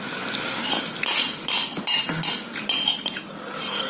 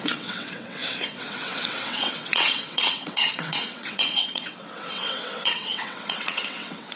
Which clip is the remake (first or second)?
second